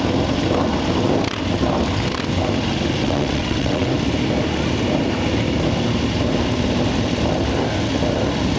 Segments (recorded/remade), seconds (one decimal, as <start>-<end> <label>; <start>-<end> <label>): 0.0-3.0 recorded; 3.0-3.9 remade; 3.9-8.6 recorded